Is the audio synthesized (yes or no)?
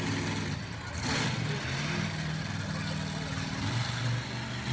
no